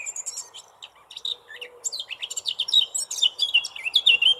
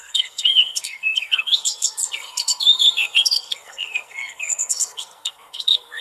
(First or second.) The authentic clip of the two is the first